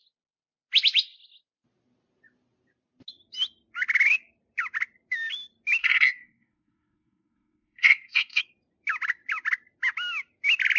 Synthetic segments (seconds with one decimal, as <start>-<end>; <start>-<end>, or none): 5.8-8.4